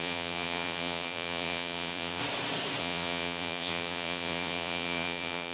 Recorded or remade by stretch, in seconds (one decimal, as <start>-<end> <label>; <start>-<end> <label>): 0.0-2.2 remade; 2.2-2.8 recorded; 2.8-5.5 remade